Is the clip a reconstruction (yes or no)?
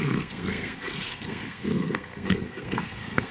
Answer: yes